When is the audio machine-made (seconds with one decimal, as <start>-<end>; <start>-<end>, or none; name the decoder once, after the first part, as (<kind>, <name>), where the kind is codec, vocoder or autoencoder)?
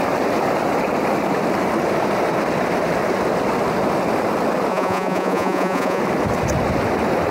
4.7-6.0 (vocoder, Vocos)